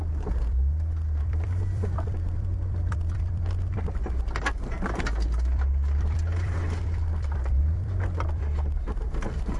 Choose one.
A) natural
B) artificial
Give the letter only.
B